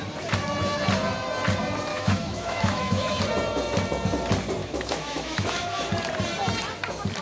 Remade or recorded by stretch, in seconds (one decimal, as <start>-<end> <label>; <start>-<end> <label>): 0.0-1.9 recorded; 1.9-3.2 remade; 3.2-4.6 recorded; 4.6-5.9 remade; 5.9-7.2 recorded